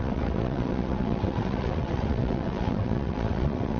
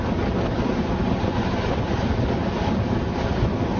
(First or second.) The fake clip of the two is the first